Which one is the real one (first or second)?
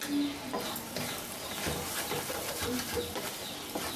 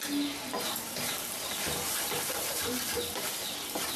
first